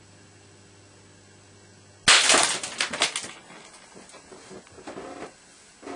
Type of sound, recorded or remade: recorded